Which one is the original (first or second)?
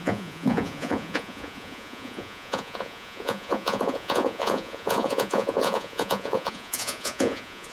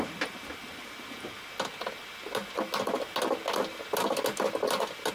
second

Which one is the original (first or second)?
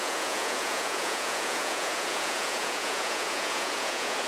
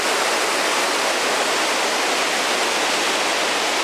second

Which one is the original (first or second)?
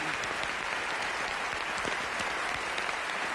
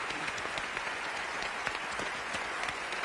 first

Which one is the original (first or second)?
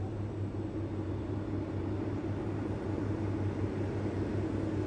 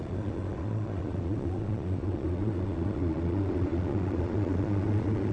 first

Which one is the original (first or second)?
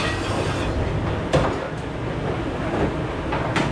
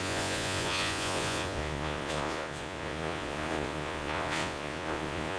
first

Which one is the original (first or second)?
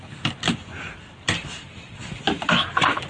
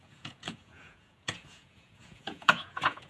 first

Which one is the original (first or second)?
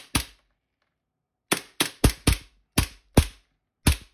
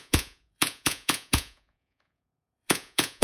first